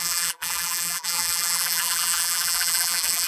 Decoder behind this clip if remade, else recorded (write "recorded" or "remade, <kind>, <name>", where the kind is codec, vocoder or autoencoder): remade, vocoder, BigVGAN v2